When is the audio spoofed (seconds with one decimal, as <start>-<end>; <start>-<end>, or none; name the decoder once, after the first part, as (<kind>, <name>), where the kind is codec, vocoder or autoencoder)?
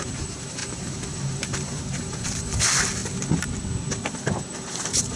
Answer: 0.0-3.0 (vocoder, BigVGAN v2); 4.5-5.2